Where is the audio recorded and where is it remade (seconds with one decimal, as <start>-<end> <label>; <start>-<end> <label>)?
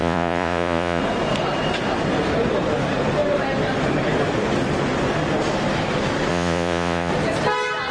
0.0-1.0 remade; 1.0-6.3 recorded; 6.3-7.1 remade; 7.1-7.9 recorded